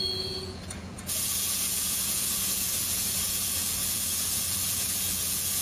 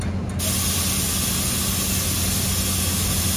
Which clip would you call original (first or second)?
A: second